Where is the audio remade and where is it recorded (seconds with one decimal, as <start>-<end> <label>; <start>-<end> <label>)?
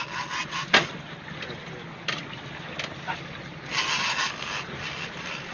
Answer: 0.0-0.4 recorded; 0.4-0.9 remade; 0.9-5.5 recorded